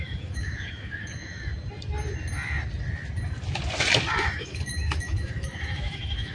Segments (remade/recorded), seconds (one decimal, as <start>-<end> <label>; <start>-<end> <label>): 0.0-1.5 remade; 1.5-4.1 recorded; 4.1-6.3 remade

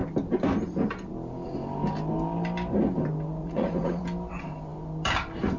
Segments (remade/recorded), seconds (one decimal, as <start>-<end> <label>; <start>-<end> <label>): 0.0-3.4 recorded; 3.4-4.0 remade; 4.0-5.6 recorded

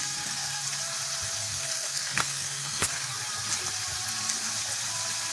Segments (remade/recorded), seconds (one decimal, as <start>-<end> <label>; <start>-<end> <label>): 0.0-0.6 remade; 0.6-1.4 recorded; 1.4-3.1 remade; 3.1-5.3 recorded

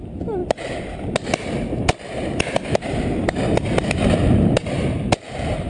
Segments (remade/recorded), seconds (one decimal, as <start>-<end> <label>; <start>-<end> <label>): 0.0-5.7 recorded

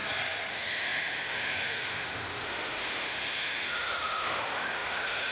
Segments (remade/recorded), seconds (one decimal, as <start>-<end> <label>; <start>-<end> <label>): 0.0-0.5 recorded; 0.5-5.3 remade

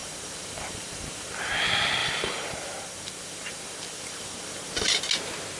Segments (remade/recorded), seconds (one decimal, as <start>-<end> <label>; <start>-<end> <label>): 0.0-1.5 remade; 1.5-2.0 recorded; 2.0-5.0 remade; 5.0-5.6 recorded

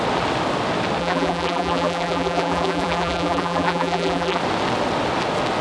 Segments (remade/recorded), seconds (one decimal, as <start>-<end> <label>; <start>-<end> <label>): 0.0-1.0 recorded; 1.0-4.4 remade; 4.4-5.6 recorded